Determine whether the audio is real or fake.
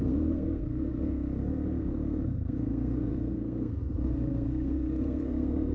fake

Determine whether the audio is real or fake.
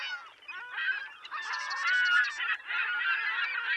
real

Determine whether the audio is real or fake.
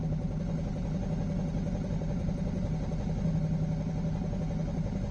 real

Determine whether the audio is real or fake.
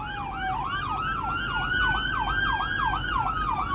real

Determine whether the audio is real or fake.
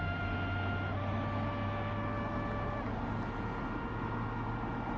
real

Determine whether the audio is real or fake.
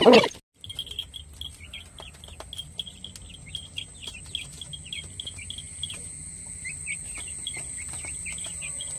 real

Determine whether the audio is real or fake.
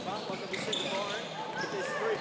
real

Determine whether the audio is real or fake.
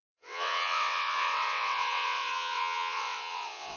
fake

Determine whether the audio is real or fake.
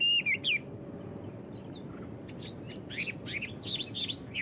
real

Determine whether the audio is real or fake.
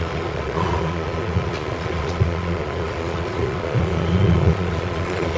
fake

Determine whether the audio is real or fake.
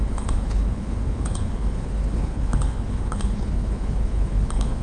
fake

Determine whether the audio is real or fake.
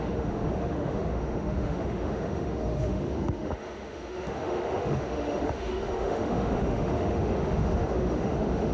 fake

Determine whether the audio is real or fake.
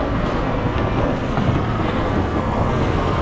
fake